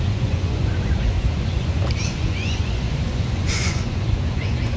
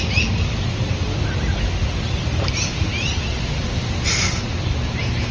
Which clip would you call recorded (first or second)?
second